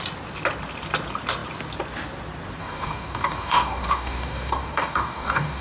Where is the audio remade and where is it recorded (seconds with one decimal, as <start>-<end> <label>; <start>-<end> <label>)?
0.0-2.6 recorded; 2.6-5.6 remade